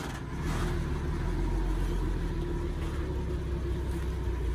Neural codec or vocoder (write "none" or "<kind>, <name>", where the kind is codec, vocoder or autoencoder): none